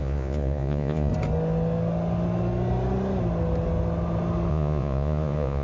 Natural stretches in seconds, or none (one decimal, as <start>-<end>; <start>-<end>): 1.1-4.5